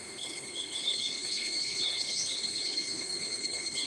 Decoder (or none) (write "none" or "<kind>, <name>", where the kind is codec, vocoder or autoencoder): codec, HILCodec